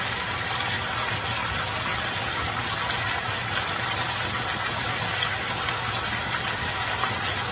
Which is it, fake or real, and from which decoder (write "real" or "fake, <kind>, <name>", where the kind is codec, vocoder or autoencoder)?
real